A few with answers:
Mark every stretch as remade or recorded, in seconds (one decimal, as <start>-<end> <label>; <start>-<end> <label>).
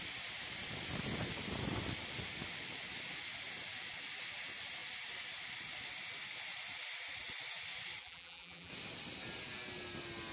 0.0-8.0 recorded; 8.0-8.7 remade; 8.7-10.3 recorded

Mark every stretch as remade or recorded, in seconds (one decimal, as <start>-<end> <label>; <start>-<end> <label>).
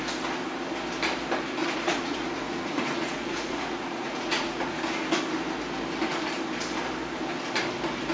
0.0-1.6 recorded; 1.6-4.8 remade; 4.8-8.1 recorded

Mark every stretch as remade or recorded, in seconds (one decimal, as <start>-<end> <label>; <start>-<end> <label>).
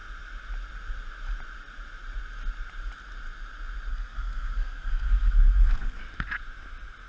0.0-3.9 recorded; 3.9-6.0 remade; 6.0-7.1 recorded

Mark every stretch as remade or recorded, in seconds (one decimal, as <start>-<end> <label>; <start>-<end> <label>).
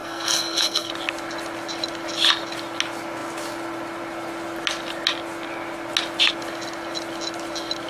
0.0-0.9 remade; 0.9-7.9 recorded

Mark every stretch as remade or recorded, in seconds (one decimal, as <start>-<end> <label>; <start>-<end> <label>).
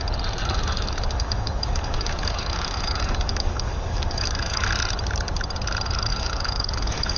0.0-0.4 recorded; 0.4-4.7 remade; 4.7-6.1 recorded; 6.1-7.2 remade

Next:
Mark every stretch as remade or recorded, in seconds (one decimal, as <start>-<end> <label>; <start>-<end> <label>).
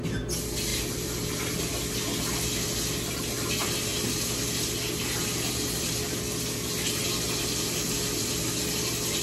0.0-9.2 recorded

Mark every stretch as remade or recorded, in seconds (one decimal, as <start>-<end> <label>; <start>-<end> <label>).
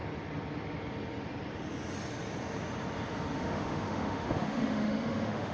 0.0-3.3 recorded; 3.3-5.5 remade